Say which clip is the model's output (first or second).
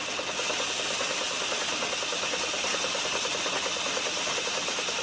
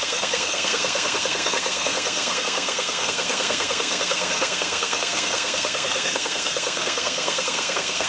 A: second